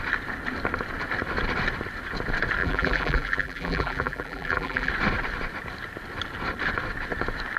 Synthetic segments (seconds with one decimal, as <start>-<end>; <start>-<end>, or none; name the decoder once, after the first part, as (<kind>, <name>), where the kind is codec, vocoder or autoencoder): 2.6-4.9 (vocoder, BigVGAN v2)